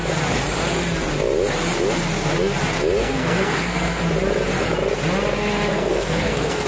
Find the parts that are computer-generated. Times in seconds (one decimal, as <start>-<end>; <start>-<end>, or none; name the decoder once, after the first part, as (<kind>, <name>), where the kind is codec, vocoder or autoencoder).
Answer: 3.0-4.0 (codec, SNAC); 5.7-6.7